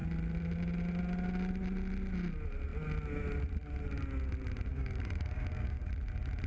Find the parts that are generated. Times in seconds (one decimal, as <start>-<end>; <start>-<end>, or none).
4.7-5.9